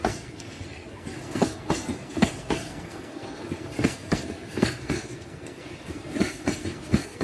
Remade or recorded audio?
remade